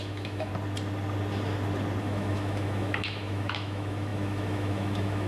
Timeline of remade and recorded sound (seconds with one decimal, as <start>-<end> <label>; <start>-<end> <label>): 0.0-0.5 remade; 0.5-2.0 recorded; 2.0-5.3 remade